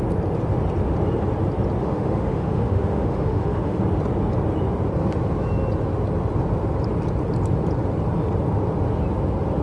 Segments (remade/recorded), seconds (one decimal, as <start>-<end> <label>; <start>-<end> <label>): 0.0-1.8 recorded; 1.8-3.8 remade; 3.8-9.6 recorded